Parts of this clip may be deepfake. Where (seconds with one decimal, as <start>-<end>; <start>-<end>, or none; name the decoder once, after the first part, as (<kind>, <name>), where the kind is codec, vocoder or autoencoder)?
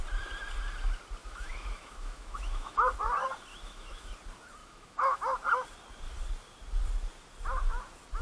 1.2-2.9 (autoencoder, DAC-VAE); 3.5-4.1; 4.6-5.2